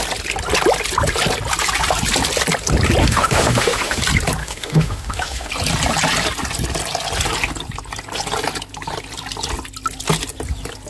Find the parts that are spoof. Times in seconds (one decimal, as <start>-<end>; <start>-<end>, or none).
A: 3.0-4.0; 4.4-5.5